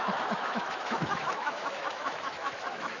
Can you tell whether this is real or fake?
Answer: fake